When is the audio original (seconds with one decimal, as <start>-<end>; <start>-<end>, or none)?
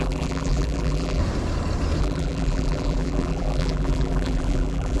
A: 1.2-2.0